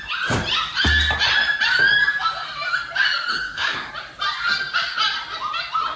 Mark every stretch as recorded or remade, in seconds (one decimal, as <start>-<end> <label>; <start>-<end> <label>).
0.0-3.3 recorded; 3.3-3.9 remade; 3.9-6.0 recorded